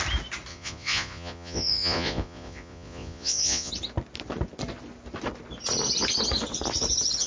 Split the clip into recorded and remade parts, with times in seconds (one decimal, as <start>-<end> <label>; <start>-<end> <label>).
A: 0.0-0.5 recorded; 0.5-3.7 remade; 3.7-7.3 recorded